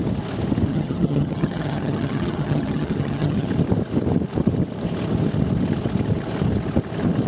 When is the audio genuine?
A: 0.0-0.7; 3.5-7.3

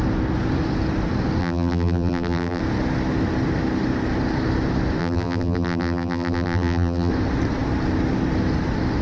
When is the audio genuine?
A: 0.0-1.4; 2.6-5.0; 7.1-9.0

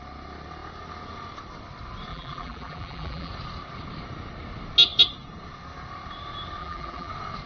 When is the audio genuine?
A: 0.0-2.1; 3.3-6.6; 7.1-7.5

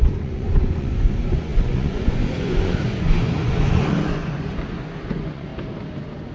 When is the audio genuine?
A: 5.5-6.3

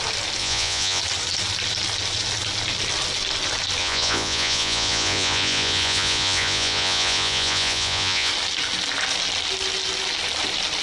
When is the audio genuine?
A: 0.0-0.4; 1.0-3.8; 8.3-10.8